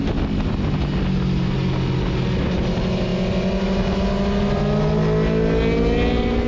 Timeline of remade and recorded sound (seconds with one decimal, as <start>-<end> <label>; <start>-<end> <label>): 0.0-6.5 recorded